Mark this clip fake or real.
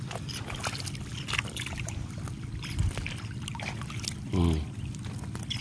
real